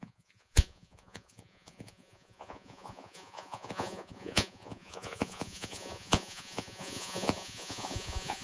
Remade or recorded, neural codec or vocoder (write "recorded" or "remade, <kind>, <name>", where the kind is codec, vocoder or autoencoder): remade, vocoder, Vocos